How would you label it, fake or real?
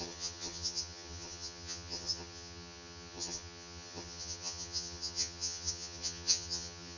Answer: fake